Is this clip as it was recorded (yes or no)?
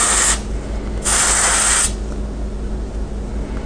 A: yes